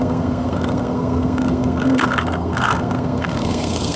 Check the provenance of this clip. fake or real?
fake